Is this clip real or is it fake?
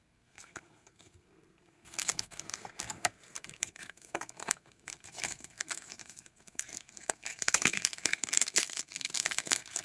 fake